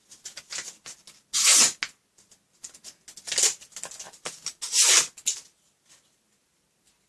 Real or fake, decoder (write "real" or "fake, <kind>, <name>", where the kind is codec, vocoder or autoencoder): real